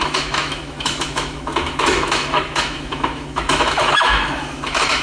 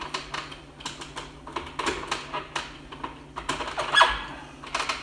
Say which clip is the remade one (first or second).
first